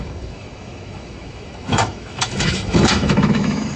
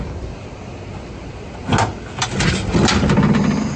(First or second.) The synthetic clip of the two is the first